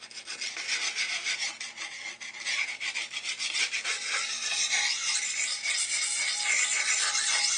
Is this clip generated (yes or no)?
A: no